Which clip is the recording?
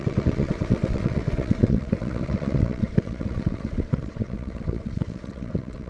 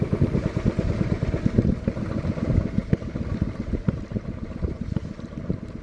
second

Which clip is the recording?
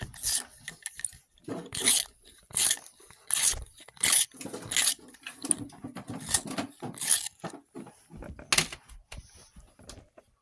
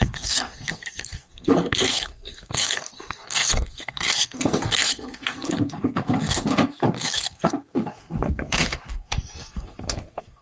first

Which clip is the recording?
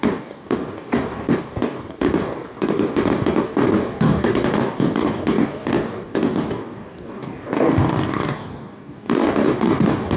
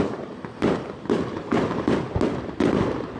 second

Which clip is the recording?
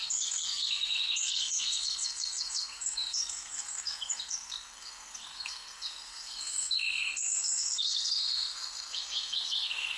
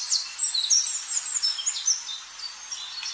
second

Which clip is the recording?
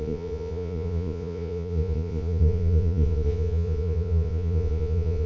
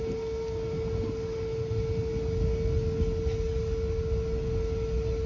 second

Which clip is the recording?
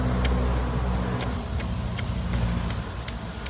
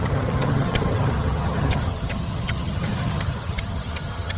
first